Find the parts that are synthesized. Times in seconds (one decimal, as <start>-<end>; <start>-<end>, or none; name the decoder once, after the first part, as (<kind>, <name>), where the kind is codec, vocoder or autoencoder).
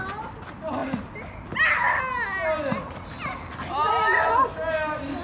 none